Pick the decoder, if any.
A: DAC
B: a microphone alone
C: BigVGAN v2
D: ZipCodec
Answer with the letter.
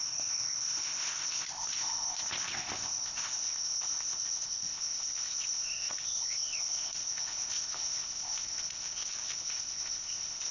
D